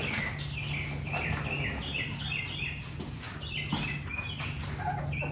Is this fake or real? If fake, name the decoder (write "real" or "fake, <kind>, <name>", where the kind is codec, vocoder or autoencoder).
real